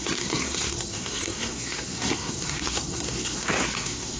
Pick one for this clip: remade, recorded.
remade